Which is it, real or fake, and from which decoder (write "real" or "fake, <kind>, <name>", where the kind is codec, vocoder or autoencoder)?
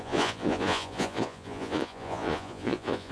fake, vocoder, Vocos